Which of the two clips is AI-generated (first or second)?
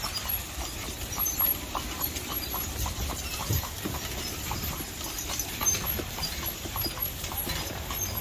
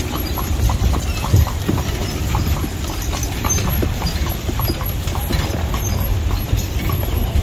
second